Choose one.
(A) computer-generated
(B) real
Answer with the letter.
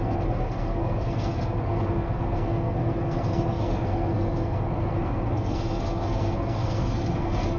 A